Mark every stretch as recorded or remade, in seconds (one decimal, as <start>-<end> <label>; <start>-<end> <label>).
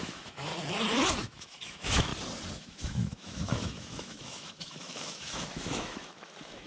0.0-0.5 remade; 0.5-1.2 recorded; 1.2-2.1 remade; 2.1-2.6 recorded; 2.6-6.7 remade